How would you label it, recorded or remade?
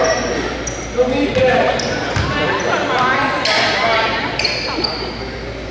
recorded